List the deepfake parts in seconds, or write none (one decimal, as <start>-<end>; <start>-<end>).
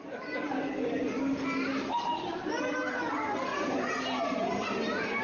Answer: 3.5-5.2